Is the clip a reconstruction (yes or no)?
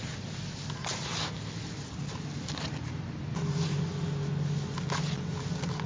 no